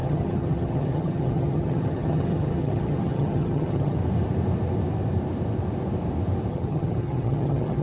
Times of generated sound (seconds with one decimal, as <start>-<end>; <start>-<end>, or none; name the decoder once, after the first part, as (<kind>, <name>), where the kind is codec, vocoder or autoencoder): 0.0-4.0 (vocoder, HiFi-GAN); 6.5-7.8